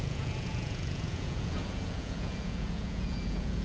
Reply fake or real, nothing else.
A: fake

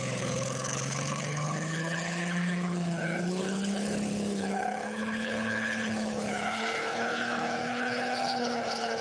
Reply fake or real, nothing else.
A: fake